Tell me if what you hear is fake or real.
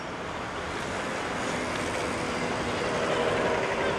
real